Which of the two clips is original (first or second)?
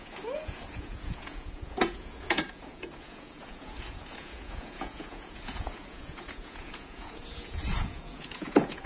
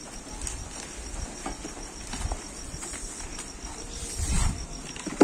second